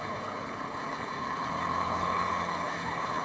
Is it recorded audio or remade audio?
remade